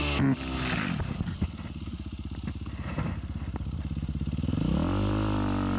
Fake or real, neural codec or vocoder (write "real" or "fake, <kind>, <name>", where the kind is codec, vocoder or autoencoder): real